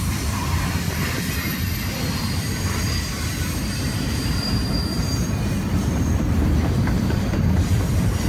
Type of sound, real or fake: fake